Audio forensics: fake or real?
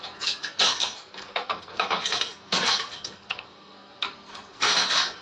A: fake